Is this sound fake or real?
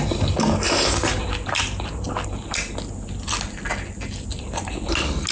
real